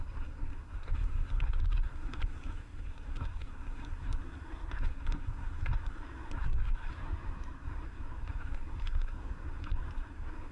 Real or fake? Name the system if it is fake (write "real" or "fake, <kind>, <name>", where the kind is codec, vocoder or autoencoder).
fake, codec, SNAC